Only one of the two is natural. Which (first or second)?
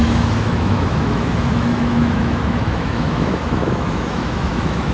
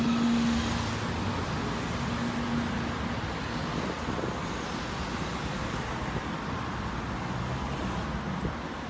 second